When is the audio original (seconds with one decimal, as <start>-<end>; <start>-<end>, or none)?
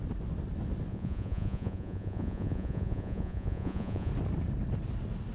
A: 0.0-0.9; 4.1-5.3